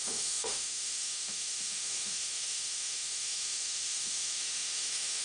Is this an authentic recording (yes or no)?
no